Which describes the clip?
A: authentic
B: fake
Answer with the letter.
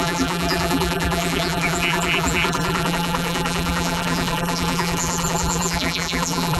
B